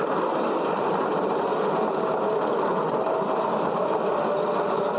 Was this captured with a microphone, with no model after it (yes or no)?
yes